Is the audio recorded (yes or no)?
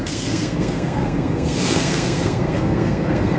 no